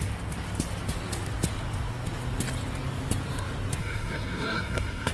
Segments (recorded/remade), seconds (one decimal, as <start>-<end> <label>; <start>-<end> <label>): 0.0-3.8 recorded; 3.8-5.1 remade